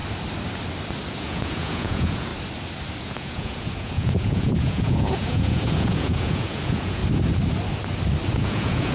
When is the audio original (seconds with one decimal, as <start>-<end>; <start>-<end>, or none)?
0.0-1.1; 2.3-3.0; 7.0-8.3